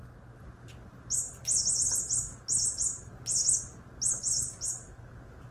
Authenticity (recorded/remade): recorded